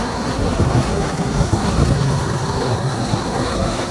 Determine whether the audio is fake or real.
fake